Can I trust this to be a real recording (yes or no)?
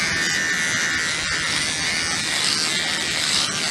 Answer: yes